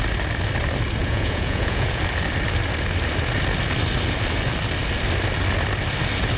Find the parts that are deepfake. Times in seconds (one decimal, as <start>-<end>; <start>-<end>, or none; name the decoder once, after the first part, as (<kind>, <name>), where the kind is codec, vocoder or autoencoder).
1.0-2.0 (vocoder, Vocos)